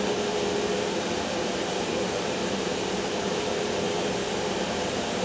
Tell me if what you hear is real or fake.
fake